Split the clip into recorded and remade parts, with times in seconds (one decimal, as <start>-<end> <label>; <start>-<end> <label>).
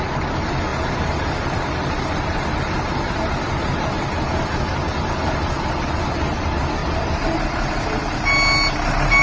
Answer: 0.0-0.7 recorded; 0.7-4.0 remade; 4.0-6.8 recorded; 6.8-7.7 remade; 7.7-9.2 recorded